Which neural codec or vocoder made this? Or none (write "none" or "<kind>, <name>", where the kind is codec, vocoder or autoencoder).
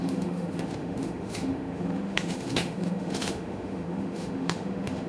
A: autoencoder, DAC-VAE